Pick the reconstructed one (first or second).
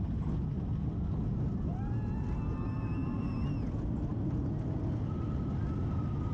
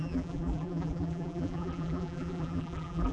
second